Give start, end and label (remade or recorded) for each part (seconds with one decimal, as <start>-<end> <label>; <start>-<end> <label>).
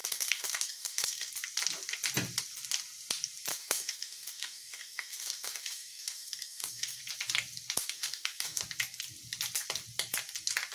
0.0-1.3 remade; 1.3-3.5 recorded; 3.5-7.0 remade; 7.0-7.8 recorded; 7.8-8.6 remade; 8.6-10.7 recorded